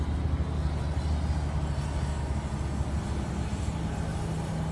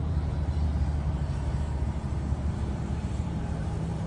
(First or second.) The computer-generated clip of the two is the second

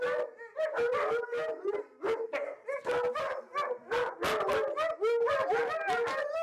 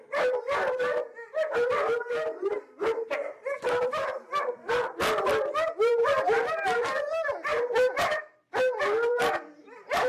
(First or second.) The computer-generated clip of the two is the second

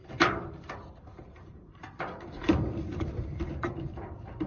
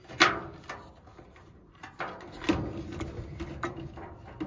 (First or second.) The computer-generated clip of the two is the first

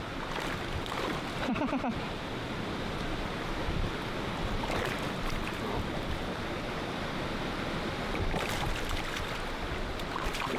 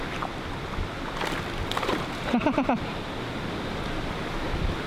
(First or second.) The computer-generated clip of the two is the first